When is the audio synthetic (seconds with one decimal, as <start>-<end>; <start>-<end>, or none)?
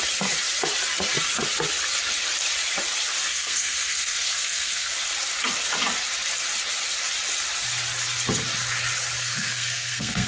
3.3-4.9; 9.2-10.3